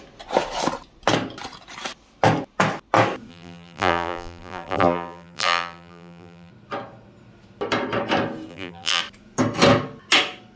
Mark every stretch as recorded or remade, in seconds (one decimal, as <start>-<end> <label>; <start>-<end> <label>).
0.0-3.3 recorded; 3.3-6.5 remade; 6.5-8.5 recorded; 8.5-9.0 remade; 9.0-10.6 recorded